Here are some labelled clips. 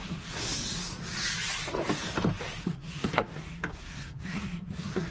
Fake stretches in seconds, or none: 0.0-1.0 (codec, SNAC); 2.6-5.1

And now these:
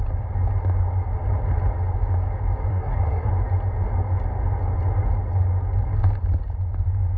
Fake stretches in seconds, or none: 2.7-3.3 (codec, SNAC)

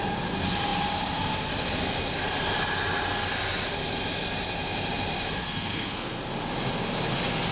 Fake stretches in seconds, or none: 5.4-6.2 (codec, SNAC)

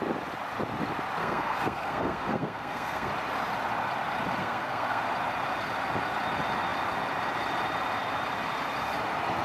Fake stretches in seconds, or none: 1.2-3.1 (codec, SNAC); 4.4-5.0

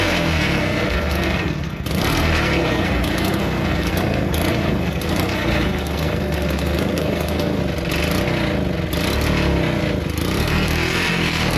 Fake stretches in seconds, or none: 0.0-7.6 (codec, SNAC); 10.4-11.6

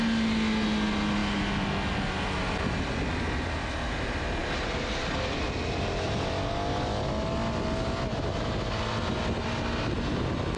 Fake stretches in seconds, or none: none

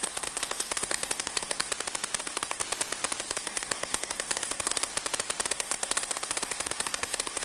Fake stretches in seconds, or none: 0.0-1.7 (codec, SNAC); 2.2-2.6; 3.2-4.9; 5.5-7.4